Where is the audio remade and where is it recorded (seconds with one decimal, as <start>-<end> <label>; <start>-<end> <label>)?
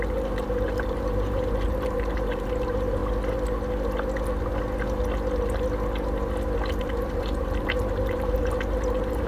0.0-3.0 remade; 3.0-6.8 recorded; 6.8-9.3 remade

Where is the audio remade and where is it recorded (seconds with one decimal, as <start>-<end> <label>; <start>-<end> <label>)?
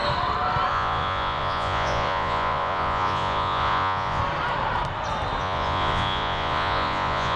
0.0-0.7 recorded; 0.7-4.2 remade; 4.2-5.4 recorded; 5.4-7.4 remade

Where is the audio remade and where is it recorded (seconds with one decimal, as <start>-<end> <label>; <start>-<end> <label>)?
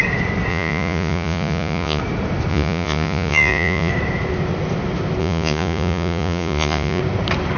0.0-0.5 recorded; 0.5-2.0 remade; 2.0-2.5 recorded; 2.5-3.9 remade; 3.9-5.2 recorded; 5.2-7.0 remade; 7.0-7.6 recorded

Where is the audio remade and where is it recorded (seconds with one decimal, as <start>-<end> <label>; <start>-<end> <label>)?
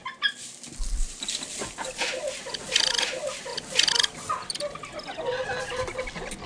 0.0-6.5 recorded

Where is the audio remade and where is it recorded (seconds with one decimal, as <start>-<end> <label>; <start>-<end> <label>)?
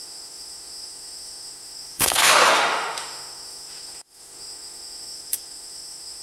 0.0-6.2 remade